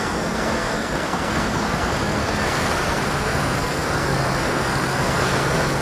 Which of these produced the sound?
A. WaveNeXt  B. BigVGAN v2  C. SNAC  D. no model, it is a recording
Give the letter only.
C